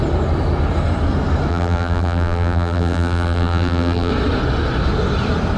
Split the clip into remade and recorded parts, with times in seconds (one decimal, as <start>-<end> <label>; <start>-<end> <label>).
0.0-1.5 recorded; 1.5-4.1 remade; 4.1-5.6 recorded